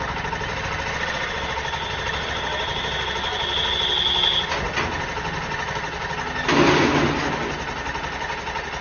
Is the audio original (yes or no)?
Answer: yes